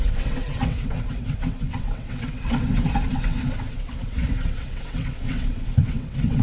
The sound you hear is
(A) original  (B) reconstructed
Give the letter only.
B